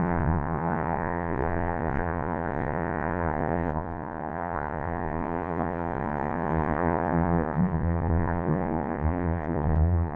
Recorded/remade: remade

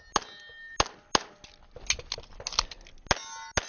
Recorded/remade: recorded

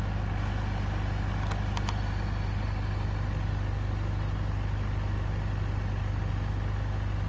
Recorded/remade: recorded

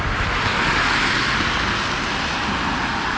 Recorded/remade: recorded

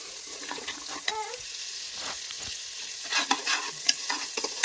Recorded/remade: remade